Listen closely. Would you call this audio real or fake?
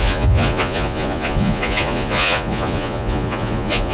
fake